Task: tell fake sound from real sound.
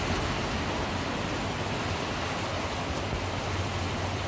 real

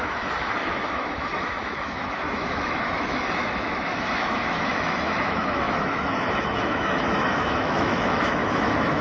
fake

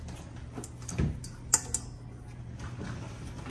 real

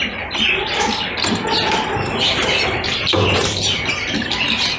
real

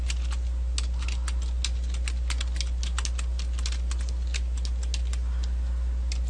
real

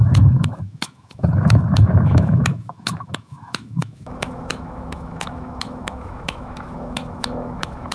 fake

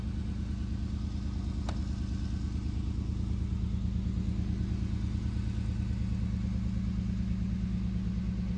real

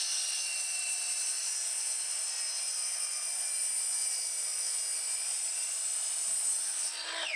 real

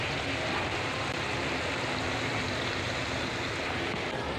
real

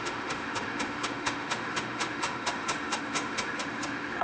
fake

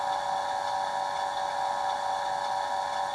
real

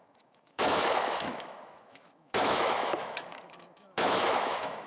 fake